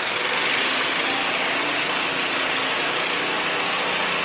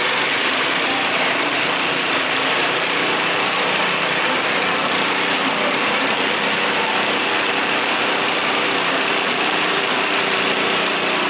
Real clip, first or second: first